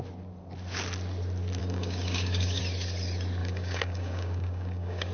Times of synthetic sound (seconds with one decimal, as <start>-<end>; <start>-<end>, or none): 1.6-2.6; 3.4-5.1

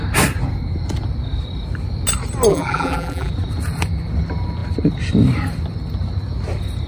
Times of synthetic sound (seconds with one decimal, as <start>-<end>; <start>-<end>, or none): 2.5-3.3

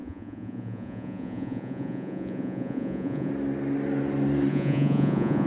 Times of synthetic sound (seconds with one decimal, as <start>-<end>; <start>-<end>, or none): 0.0-3.3; 4.5-5.5

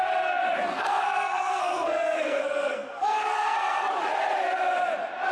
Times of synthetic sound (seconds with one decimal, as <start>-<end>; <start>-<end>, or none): 0.7-3.9

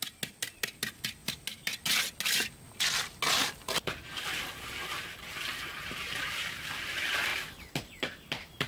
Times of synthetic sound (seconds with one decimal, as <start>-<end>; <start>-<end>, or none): none

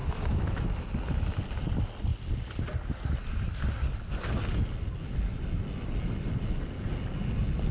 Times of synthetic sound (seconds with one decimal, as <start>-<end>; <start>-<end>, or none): 0.0-0.8

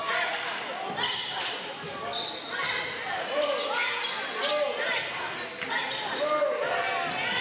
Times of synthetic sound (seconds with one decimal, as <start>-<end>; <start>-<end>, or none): none